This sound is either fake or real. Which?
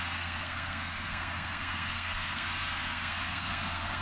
fake